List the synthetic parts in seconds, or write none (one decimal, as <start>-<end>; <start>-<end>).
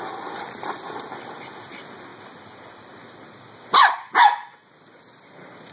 none